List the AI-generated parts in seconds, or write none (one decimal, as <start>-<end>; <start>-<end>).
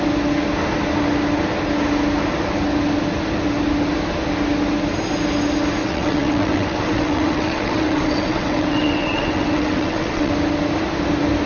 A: 5.8-10.3